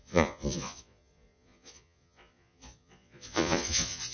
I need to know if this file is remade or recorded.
remade